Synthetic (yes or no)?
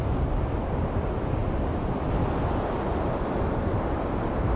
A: no